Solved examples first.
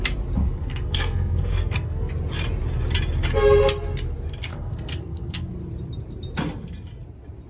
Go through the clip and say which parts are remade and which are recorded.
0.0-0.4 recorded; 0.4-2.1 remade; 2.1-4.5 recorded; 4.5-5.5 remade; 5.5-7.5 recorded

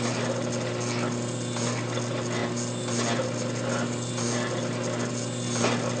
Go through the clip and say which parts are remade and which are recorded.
0.0-6.0 recorded

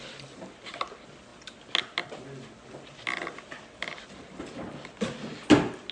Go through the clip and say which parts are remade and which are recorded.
0.0-5.9 recorded

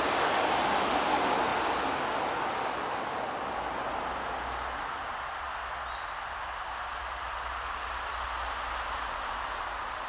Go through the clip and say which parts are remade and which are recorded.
0.0-10.1 recorded

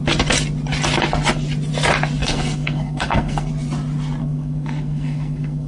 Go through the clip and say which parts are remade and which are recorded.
0.0-2.2 recorded; 2.2-3.5 remade; 3.5-4.2 recorded; 4.2-5.7 remade

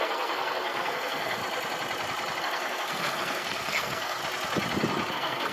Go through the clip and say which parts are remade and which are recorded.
0.0-1.4 remade; 1.4-2.4 recorded; 2.4-4.2 remade; 4.2-5.1 recorded; 5.1-5.5 remade

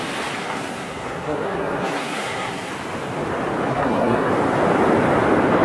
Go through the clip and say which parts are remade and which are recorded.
0.0-0.4 recorded; 0.4-2.7 remade; 2.7-3.7 recorded; 3.7-4.3 remade; 4.3-5.6 recorded

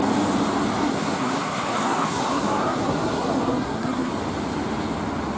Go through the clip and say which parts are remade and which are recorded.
0.0-0.9 recorded; 0.9-4.1 remade; 4.1-5.4 recorded